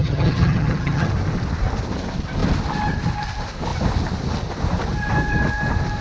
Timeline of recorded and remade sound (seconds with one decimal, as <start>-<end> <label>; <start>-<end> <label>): 0.0-1.1 remade; 1.1-6.0 recorded